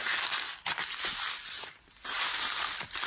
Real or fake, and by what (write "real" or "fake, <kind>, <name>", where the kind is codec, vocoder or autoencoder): real